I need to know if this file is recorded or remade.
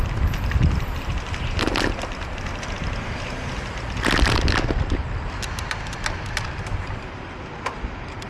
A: recorded